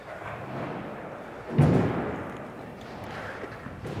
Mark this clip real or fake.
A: real